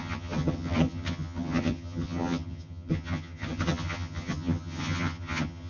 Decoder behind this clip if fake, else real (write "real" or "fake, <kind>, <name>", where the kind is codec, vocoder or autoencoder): fake, vocoder, HiFi-GAN